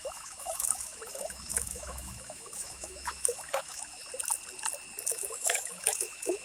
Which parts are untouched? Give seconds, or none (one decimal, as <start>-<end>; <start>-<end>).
4.0-5.1